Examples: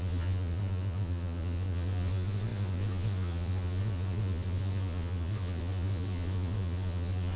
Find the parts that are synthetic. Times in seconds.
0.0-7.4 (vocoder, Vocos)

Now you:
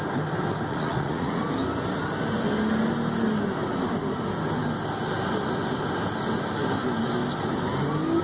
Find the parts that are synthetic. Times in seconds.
0.7-1.4 (vocoder, Vocos)

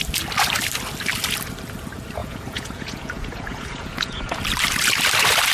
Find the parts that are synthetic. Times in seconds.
2.2-4.4 (vocoder, Vocos)

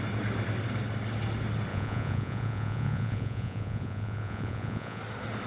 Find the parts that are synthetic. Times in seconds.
1.7-5.0 (vocoder, Vocos)

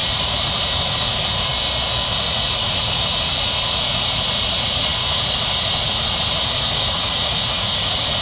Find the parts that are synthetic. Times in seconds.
0.0-1.5 (vocoder, Vocos); 2.1-8.2